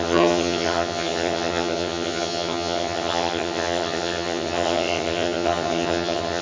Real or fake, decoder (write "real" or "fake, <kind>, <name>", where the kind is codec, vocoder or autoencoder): fake, vocoder, HiFi-GAN